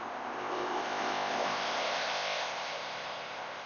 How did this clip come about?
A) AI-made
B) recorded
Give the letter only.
A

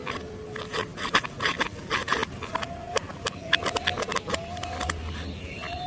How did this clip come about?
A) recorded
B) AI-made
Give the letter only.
A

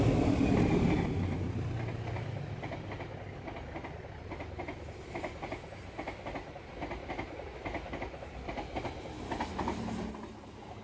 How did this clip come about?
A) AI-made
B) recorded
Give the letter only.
B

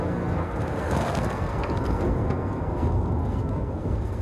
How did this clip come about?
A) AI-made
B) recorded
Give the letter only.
A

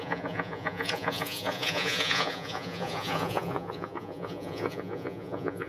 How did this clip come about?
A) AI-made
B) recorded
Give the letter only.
A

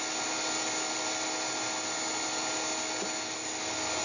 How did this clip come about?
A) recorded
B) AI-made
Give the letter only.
A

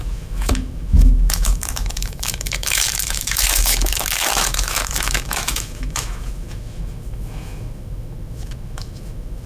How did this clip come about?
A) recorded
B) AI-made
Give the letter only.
B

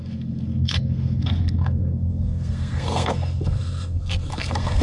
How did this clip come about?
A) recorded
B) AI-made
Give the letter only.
B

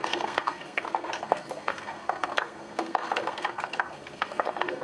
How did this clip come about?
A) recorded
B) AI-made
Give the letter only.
B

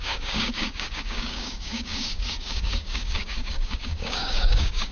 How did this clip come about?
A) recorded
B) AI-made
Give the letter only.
B